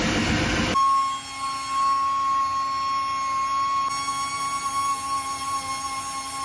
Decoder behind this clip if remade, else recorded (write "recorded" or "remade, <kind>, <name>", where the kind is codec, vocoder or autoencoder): recorded